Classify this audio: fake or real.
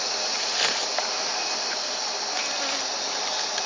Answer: real